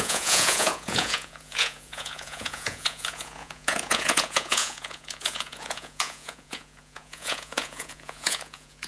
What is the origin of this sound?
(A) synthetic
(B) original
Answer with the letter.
A